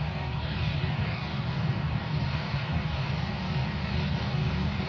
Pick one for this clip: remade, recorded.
remade